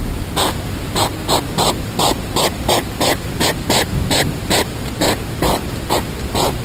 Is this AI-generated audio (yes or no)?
no